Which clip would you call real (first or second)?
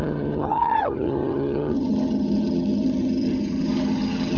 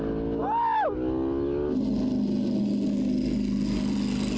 second